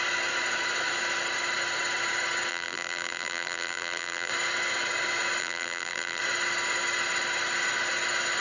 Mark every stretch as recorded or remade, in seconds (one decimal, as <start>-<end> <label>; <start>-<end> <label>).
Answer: 0.0-2.5 recorded; 2.5-4.3 remade; 4.3-5.4 recorded; 5.4-6.2 remade; 6.2-8.4 recorded